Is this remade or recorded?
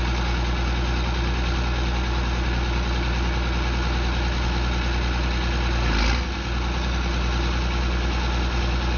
recorded